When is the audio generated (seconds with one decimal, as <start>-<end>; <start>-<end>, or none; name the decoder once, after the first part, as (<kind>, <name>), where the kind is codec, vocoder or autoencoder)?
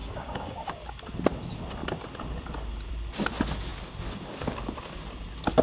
0.0-0.7 (codec, DAC)